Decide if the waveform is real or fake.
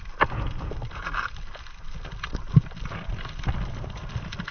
real